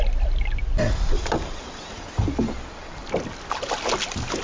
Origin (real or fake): real